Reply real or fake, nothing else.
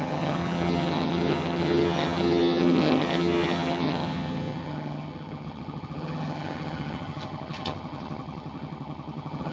fake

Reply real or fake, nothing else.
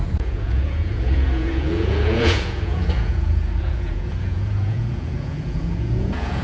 fake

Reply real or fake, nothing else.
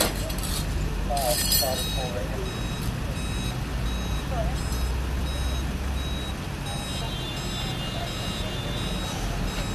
real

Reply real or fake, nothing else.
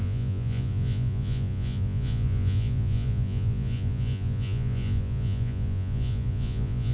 fake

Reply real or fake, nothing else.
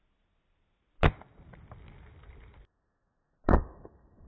real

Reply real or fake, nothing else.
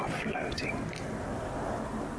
real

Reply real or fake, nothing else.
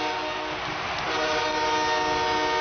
real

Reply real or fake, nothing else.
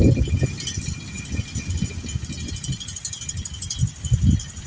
real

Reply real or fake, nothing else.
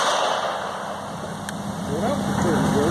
real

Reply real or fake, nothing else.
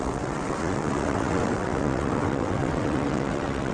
fake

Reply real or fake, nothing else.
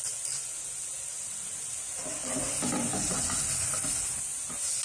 real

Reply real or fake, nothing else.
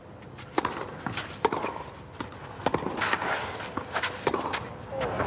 real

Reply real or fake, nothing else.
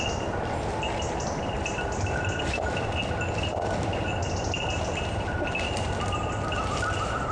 real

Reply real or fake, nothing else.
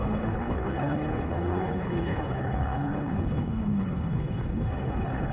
fake